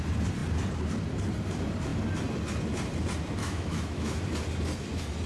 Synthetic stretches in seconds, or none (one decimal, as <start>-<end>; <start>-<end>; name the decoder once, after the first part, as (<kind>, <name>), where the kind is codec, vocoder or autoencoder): 3.4-4.2 (autoencoder, DAC-VAE)